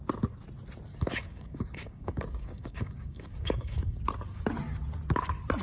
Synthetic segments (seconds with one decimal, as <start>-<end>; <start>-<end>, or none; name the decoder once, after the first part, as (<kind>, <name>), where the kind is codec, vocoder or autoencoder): 0.9-4.0 (codec, DAC)